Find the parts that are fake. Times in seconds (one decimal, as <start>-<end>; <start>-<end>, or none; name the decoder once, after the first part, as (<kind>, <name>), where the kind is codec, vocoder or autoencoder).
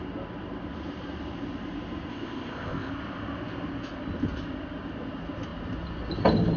2.1-2.9 (codec, ZipCodec)